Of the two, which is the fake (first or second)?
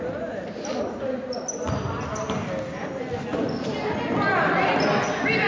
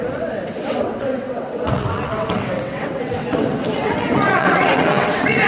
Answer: second